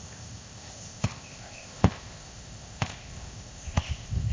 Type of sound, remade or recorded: remade